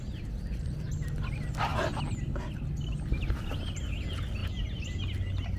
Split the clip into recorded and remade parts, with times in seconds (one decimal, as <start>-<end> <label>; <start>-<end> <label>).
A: 0.0-5.6 recorded

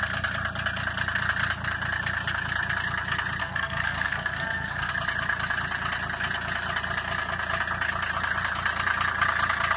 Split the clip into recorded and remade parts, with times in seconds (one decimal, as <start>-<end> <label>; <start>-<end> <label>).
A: 0.0-3.4 recorded; 3.4-4.9 remade; 4.9-9.8 recorded